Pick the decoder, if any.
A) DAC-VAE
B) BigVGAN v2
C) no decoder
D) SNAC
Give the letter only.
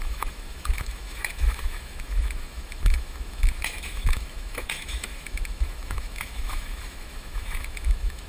A